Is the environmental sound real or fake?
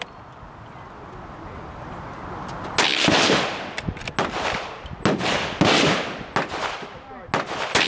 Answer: real